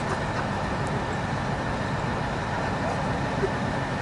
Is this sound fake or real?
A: real